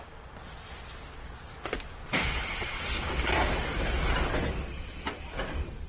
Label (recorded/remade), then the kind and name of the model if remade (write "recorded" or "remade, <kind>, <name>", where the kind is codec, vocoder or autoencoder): recorded